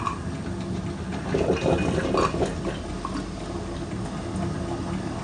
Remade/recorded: recorded